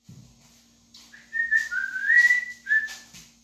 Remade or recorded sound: recorded